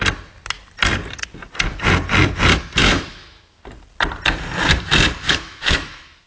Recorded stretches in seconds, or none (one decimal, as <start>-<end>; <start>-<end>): 0.0-2.8; 3.6-5.2